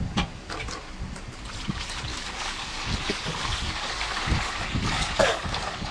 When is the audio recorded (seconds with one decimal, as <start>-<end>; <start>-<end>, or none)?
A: 0.0-2.1